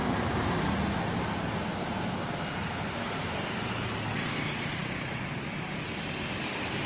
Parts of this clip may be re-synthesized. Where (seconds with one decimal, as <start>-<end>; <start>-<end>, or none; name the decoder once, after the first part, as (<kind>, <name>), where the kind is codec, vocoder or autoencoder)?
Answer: none